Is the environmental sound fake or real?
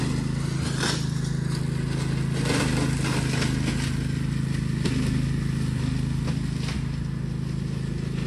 real